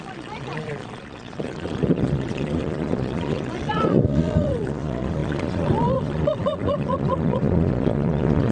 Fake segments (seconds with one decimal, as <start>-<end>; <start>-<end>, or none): 0.0-8.5

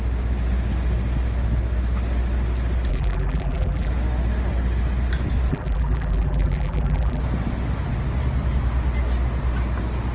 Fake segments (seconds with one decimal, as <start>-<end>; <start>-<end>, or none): 2.9-3.9; 5.5-7.2

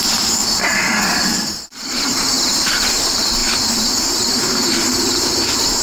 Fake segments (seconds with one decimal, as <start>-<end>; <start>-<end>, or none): 0.0-0.4; 1.3-5.8

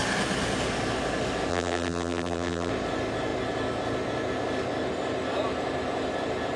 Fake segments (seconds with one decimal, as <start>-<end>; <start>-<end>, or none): 1.5-2.7

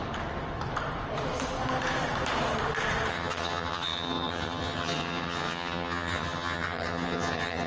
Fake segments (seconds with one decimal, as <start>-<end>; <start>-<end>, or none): 3.1-7.7

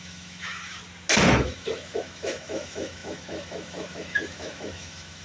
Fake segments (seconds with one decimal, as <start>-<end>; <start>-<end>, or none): 0.0-0.8; 1.4-5.2